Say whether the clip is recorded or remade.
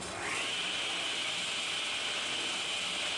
recorded